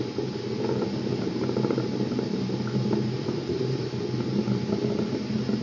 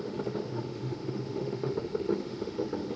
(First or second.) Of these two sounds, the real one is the first